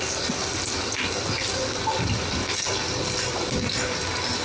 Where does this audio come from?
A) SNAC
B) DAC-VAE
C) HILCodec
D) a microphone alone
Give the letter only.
D